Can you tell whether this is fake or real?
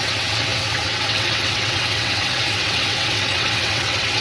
fake